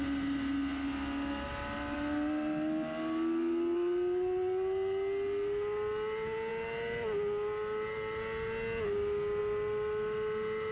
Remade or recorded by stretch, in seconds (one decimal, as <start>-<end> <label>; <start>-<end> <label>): 0.0-10.7 recorded